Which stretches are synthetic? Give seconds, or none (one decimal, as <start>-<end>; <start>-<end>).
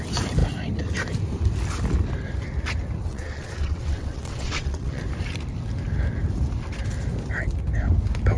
3.1-5.0